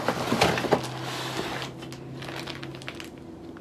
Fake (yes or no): no